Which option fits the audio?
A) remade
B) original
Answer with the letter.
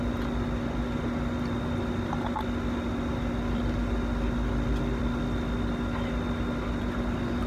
B